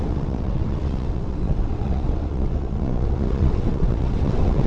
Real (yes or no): no